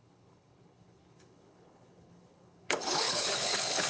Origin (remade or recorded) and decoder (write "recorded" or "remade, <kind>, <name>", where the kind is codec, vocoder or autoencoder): remade, codec, HILCodec